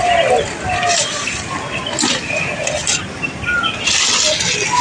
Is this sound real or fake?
real